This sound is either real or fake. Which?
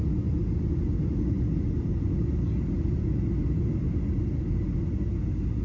real